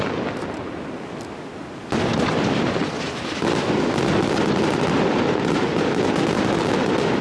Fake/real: real